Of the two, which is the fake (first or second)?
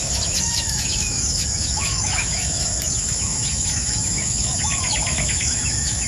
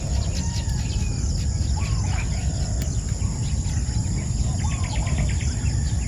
first